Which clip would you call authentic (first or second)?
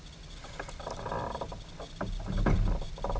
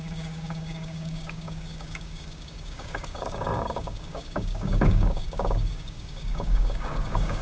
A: first